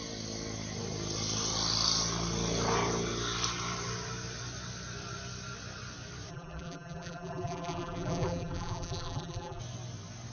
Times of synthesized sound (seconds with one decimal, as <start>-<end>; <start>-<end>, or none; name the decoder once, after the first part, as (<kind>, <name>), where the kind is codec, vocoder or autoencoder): 6.3-9.6 (vocoder, BigVGAN v2)